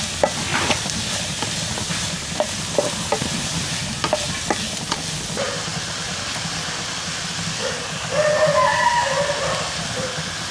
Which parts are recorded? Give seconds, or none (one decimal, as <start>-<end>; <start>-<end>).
0.0-10.5